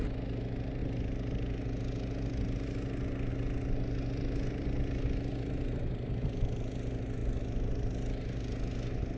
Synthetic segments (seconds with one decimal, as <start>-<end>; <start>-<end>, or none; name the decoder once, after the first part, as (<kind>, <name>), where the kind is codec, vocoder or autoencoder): none